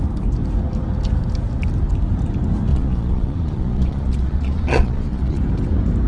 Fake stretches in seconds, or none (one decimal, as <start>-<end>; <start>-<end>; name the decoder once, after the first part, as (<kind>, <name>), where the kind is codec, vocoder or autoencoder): 2.7-5.4 (vocoder, Vocos)